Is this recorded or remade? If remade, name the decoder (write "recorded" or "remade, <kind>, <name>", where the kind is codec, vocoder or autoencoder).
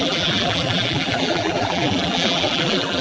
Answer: remade, vocoder, BigVGAN v2